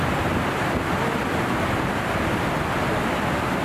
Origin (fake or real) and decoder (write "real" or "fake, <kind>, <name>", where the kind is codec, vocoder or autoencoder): real